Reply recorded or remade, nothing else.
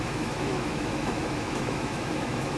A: remade